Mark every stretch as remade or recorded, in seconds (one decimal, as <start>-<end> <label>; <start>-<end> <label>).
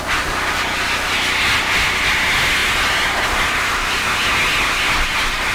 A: 0.0-5.5 recorded